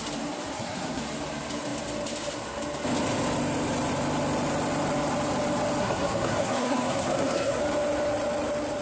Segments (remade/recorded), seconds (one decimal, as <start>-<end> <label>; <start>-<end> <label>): 0.0-0.5 recorded; 0.5-1.0 remade; 1.0-5.8 recorded; 5.8-7.6 remade; 7.6-8.8 recorded